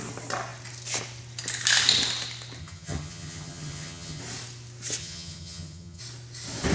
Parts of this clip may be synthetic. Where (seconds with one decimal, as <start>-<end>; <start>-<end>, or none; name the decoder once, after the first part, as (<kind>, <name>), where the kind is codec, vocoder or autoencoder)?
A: 2.6-4.2 (vocoder, HiFi-GAN); 5.0-6.0